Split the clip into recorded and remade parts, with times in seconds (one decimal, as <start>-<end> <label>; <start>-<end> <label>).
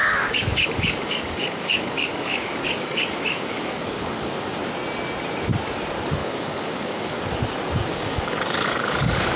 0.0-4.3 remade; 4.3-6.2 recorded; 6.2-7.3 remade; 7.3-7.9 recorded; 7.9-9.4 remade